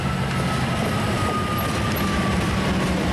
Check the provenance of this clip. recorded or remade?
recorded